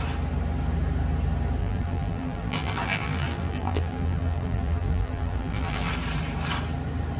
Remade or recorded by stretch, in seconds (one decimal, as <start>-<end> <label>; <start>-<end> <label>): 0.0-1.6 recorded; 1.6-5.9 remade; 5.9-7.2 recorded